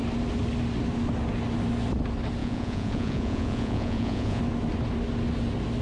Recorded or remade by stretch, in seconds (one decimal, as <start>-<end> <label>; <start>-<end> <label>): 0.0-2.4 recorded; 2.4-4.4 remade; 4.4-5.8 recorded